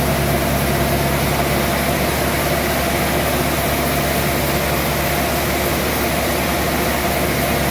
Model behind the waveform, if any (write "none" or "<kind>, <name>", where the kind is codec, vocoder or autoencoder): none